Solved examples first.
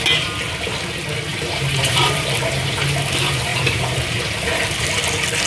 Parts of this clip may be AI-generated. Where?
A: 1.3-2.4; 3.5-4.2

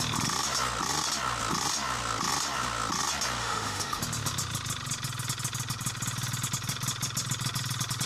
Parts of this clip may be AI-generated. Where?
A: 3.4-4.0

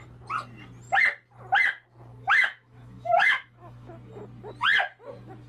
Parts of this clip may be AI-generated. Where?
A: 2.1-3.9